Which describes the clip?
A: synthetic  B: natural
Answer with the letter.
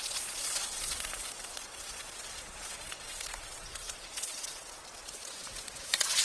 A